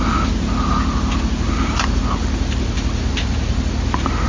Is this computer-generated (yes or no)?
no